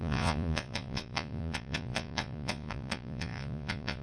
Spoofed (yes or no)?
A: yes